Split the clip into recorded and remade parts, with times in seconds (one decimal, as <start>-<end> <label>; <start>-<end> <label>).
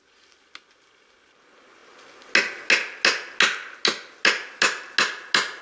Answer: 0.0-5.6 recorded